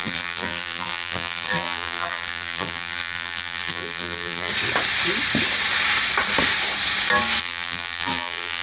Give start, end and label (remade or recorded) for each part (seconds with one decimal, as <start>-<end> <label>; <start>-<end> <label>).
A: 0.0-4.5 remade; 4.5-7.4 recorded; 7.4-8.6 remade